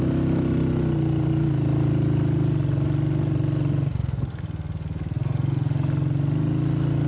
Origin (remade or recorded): recorded